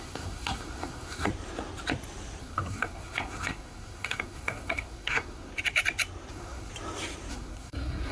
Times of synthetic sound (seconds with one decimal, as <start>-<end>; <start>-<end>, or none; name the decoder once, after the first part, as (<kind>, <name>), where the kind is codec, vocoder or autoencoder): 0.0-1.3 (codec, SNAC); 2.4-5.5; 6.3-6.7; 7.3-8.1